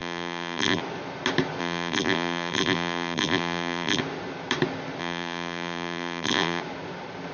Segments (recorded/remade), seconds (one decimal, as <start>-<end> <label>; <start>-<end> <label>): 0.0-0.8 remade; 0.8-1.6 recorded; 1.6-4.0 remade; 4.0-5.0 recorded; 5.0-6.6 remade; 6.6-7.3 recorded